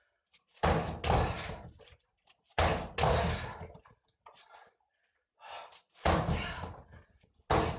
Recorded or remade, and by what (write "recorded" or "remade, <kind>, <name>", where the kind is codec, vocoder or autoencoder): recorded